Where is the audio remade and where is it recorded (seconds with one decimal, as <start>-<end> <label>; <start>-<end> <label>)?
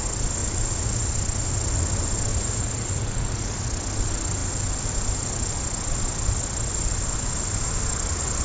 0.0-0.4 recorded; 0.4-1.1 remade; 1.1-2.3 recorded; 2.3-3.6 remade; 3.6-8.4 recorded